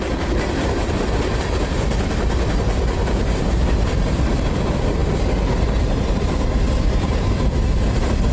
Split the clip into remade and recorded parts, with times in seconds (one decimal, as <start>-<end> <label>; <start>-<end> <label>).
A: 0.0-8.3 recorded